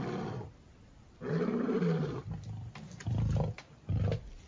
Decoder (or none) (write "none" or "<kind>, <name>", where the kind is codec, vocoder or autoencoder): none